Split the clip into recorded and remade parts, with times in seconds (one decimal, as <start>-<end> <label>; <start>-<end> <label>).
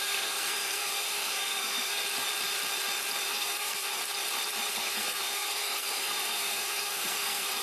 0.0-2.0 remade; 2.0-3.3 recorded; 3.3-3.9 remade; 3.9-4.7 recorded; 4.7-7.6 remade